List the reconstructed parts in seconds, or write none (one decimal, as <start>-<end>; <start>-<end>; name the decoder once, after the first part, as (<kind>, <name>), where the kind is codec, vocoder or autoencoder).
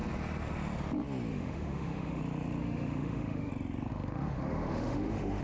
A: 1.3-2.2 (autoencoder, DAC-VAE); 2.6-3.5; 3.9-5.4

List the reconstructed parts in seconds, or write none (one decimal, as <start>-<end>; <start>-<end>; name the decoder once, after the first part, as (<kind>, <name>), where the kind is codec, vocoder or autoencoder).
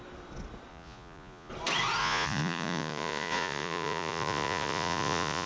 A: 0.7-1.5 (vocoder, Vocos); 2.0-5.5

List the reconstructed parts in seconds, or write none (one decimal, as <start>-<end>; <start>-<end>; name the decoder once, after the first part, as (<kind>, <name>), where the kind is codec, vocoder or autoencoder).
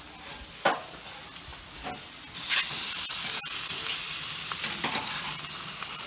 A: none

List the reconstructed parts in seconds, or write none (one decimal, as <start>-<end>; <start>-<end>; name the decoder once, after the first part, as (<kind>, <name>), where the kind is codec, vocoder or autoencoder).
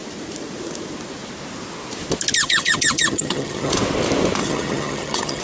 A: 2.4-3.7 (vocoder, HiFi-GAN); 4.4-5.4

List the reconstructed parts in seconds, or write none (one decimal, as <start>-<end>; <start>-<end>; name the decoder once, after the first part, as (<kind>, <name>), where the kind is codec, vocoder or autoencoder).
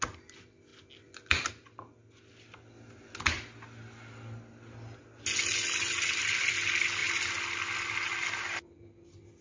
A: none